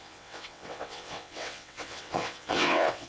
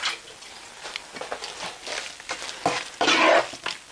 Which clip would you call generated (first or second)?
first